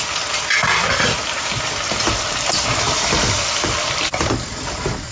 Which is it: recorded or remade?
remade